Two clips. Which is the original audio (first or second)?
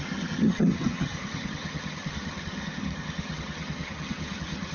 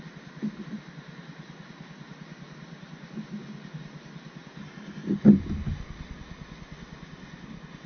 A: second